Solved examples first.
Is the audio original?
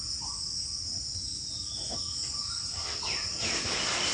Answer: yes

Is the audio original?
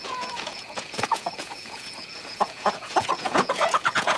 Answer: no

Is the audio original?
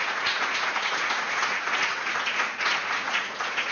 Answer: no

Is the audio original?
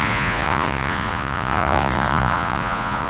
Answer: no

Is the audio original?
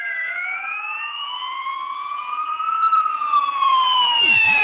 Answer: no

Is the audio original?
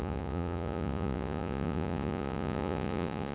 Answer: no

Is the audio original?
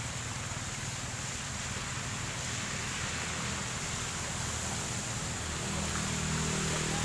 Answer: yes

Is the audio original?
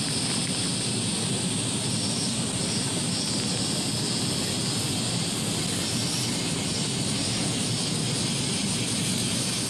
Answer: yes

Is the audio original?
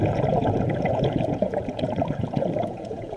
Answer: no